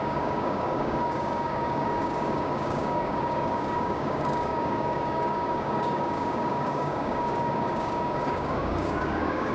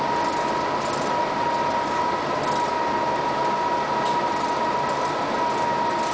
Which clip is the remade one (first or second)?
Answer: first